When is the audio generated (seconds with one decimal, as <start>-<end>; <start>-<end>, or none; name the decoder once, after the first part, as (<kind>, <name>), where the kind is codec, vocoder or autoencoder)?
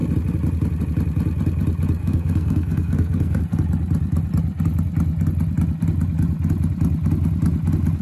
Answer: 2.0-3.4 (codec, SNAC)